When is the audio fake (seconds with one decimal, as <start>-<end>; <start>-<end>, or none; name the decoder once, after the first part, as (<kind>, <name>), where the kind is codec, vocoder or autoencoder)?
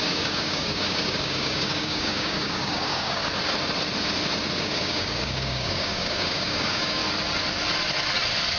0.0-3.2 (codec, DAC); 4.6-7.0